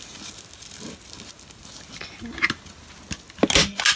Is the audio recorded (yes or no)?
yes